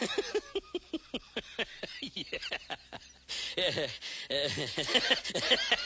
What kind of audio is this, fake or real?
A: real